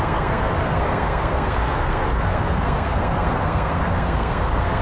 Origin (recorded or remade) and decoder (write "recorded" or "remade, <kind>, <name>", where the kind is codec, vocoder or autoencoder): remade, codec, SNAC